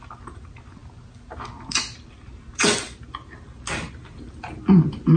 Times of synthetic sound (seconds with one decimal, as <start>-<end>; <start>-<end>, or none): none